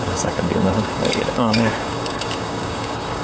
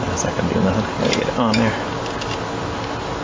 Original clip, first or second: second